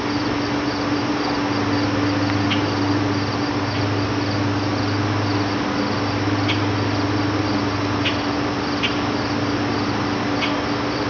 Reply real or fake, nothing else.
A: real